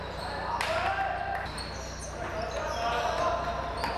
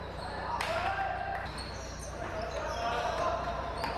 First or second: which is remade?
second